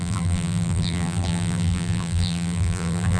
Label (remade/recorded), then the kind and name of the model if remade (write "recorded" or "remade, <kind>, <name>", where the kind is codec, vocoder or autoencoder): remade, vocoder, BigVGAN v2